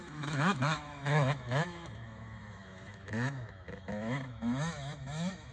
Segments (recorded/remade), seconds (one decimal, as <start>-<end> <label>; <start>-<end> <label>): 0.0-5.5 remade